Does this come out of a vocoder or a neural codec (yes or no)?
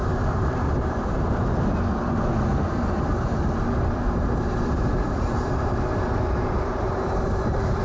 yes